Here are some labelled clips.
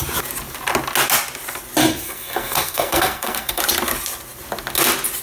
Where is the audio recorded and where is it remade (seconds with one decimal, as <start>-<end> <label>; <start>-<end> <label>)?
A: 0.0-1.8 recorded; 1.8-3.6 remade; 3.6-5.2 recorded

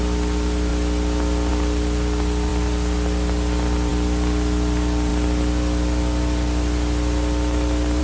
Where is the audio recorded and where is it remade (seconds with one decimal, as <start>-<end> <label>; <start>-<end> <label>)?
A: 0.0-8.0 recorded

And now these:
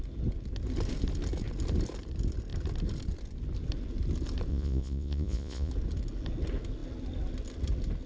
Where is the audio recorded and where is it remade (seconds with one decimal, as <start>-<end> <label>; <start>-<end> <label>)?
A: 0.0-4.5 recorded; 4.5-5.7 remade; 5.7-8.1 recorded